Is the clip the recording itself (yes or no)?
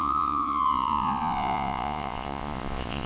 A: no